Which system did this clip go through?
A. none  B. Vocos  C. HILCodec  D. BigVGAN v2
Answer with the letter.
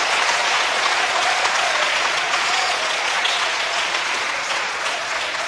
B